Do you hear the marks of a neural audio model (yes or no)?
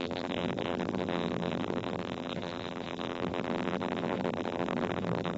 yes